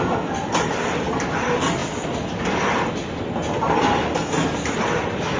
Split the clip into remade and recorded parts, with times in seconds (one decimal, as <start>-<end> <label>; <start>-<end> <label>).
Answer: 0.0-5.4 recorded